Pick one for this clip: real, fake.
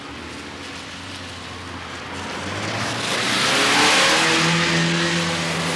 real